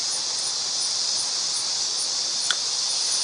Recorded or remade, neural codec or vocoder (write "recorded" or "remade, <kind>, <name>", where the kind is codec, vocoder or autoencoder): recorded